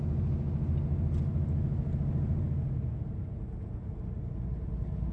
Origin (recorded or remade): recorded